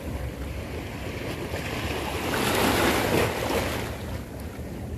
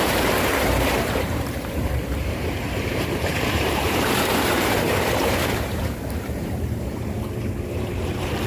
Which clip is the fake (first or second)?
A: second